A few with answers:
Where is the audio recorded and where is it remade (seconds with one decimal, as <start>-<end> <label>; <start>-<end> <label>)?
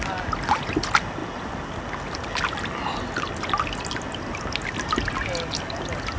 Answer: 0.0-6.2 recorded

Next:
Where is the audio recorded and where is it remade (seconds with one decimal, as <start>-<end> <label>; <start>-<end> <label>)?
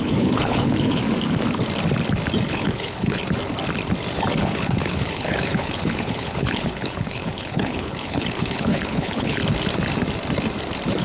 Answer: 0.0-1.0 remade; 1.0-2.5 recorded; 2.5-3.2 remade; 3.2-4.4 recorded; 4.4-9.4 remade; 9.4-11.0 recorded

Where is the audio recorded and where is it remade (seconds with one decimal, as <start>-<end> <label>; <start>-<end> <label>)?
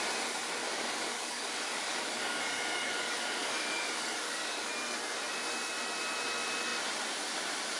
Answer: 0.0-0.6 recorded; 0.6-4.7 remade; 4.7-7.8 recorded